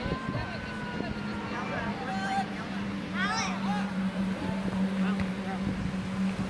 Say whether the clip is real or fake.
real